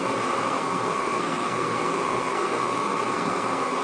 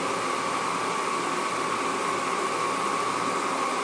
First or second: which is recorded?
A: second